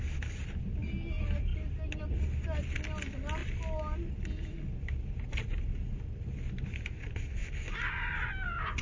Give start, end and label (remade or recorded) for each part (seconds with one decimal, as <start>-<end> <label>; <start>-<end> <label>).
0.0-8.8 recorded